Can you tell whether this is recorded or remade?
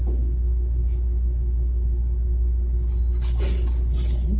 recorded